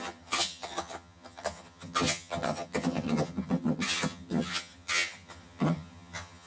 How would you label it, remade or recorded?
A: remade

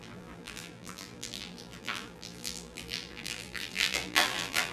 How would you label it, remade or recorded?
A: remade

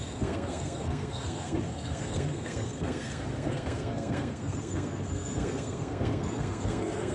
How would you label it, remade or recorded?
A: remade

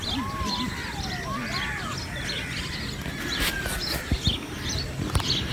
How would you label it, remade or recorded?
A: recorded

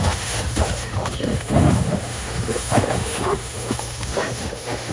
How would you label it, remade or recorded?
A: remade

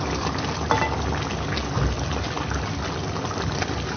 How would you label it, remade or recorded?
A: recorded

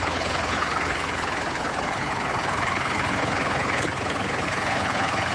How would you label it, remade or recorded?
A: remade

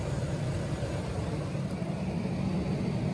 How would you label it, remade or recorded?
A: recorded